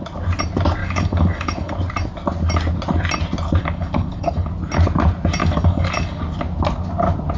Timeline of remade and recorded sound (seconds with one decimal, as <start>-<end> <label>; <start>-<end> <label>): 0.0-0.8 recorded; 0.8-1.7 remade; 1.7-3.6 recorded; 3.6-4.5 remade; 4.5-5.4 recorded; 5.4-6.2 remade; 6.2-7.4 recorded